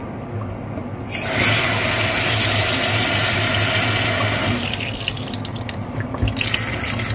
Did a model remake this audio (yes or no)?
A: no